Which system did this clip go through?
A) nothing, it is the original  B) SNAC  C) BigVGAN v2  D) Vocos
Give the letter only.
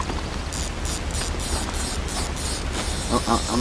A